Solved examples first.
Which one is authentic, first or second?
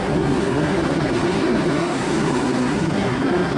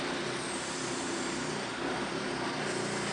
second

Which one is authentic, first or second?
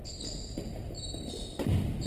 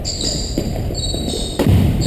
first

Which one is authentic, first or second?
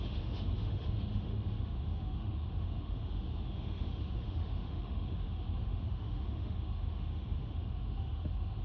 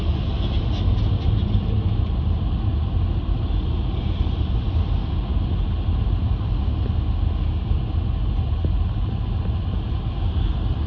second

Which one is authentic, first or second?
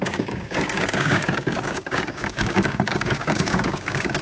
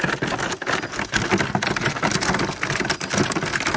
second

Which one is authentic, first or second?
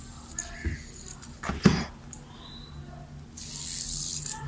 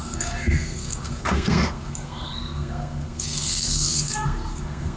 first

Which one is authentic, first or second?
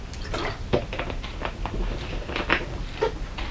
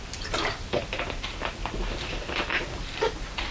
first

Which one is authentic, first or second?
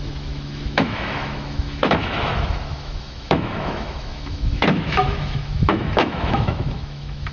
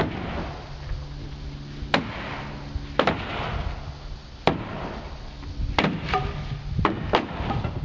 second